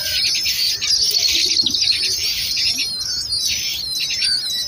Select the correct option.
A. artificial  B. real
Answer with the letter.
B